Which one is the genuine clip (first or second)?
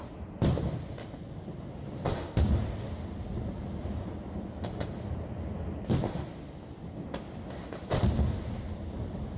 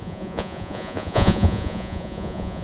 first